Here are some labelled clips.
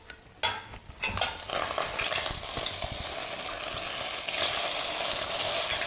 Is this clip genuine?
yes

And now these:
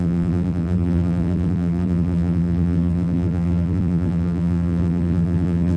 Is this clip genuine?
no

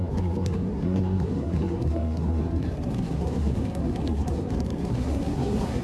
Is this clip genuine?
no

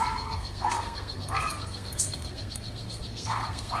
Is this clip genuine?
no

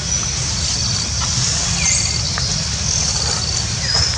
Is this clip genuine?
yes